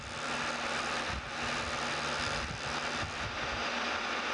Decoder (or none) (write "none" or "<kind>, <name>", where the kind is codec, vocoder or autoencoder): none